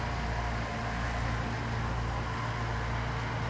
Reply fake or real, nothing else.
real